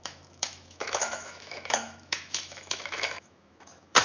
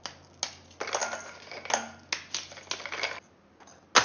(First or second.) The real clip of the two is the second